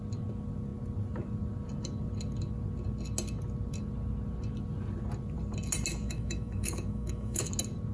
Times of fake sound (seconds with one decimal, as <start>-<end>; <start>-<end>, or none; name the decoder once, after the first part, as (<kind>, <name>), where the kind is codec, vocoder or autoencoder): 5.9-7.5 (autoencoder, DAC-VAE)